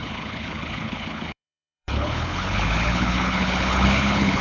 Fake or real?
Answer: fake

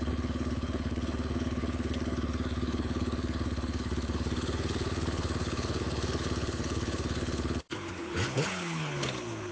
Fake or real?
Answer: fake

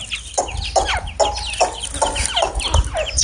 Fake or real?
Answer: real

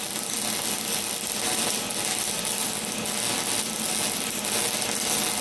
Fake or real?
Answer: real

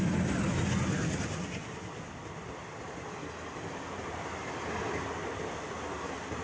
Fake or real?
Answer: real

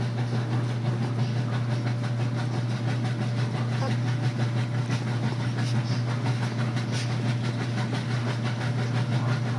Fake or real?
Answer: real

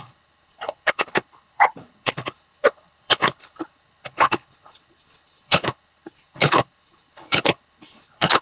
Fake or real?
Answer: fake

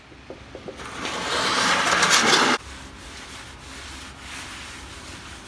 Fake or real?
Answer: real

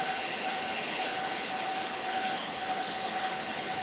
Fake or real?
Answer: fake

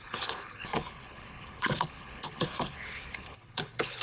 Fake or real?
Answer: fake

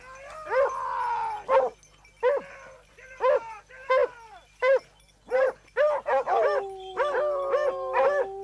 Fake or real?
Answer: real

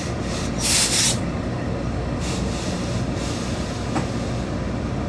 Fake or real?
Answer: real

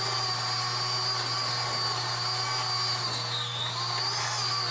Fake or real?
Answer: real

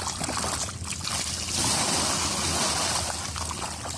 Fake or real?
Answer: real